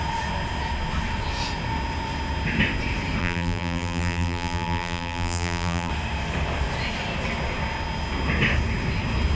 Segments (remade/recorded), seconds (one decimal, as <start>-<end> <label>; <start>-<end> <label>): 0.0-3.2 recorded; 3.2-5.9 remade; 5.9-9.3 recorded